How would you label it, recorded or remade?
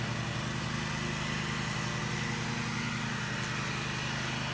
recorded